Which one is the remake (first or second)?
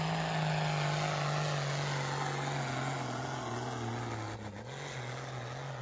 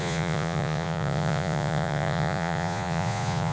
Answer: second